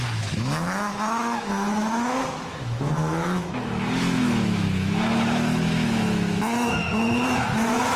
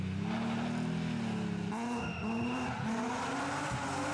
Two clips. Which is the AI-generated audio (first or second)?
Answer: first